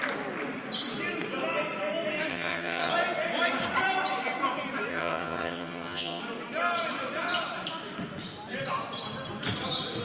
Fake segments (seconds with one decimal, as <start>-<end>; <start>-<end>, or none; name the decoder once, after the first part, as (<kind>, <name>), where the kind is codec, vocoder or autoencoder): 2.3-2.9 (vocoder, HiFi-GAN); 4.9-6.2